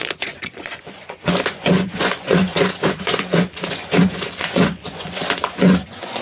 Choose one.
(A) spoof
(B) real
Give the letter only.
A